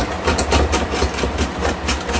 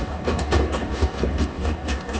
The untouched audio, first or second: first